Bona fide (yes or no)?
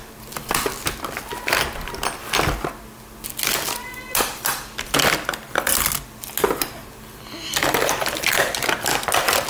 yes